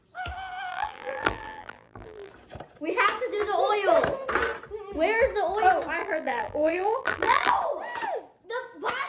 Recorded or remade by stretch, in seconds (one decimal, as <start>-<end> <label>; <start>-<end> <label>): 0.0-0.7 recorded; 0.7-2.3 remade; 2.3-6.0 recorded; 6.0-7.5 remade; 7.5-9.1 recorded